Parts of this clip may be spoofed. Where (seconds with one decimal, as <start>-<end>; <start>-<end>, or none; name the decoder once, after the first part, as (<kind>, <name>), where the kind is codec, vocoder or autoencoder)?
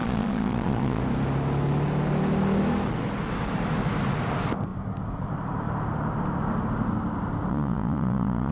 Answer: 0.0-1.0 (vocoder, Vocos); 7.5-8.5